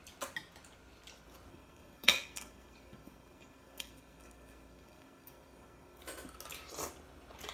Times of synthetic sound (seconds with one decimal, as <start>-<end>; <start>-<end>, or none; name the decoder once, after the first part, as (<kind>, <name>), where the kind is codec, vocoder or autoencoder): 1.5-6.0 (codec, SNAC)